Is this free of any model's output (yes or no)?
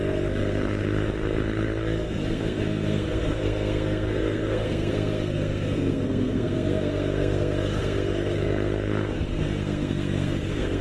no